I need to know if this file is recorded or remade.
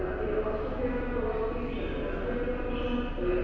recorded